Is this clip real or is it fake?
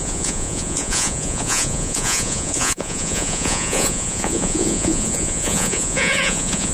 fake